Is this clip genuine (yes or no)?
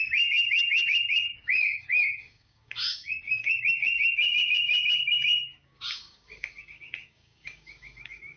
no